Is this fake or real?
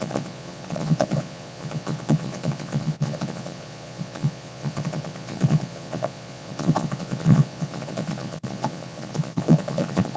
fake